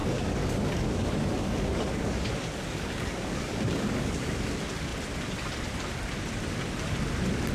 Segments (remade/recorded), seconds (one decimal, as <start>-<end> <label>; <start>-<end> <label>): 0.0-4.5 remade; 4.5-7.5 recorded